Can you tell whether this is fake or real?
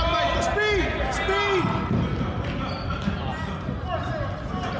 real